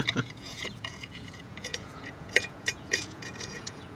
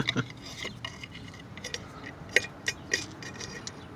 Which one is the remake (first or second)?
first